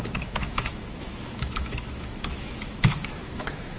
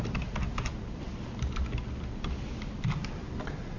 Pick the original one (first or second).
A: second